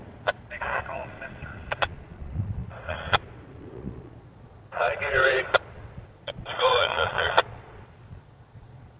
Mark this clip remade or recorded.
remade